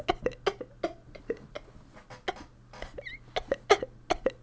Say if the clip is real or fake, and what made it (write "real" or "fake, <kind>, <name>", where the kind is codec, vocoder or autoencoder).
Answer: real